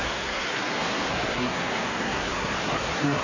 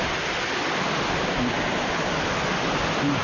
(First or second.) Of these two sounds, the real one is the second